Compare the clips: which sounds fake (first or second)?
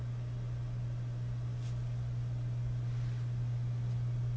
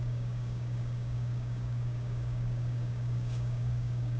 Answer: second